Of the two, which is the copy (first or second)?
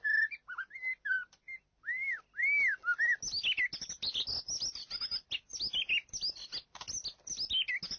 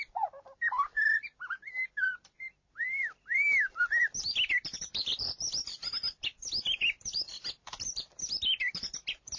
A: second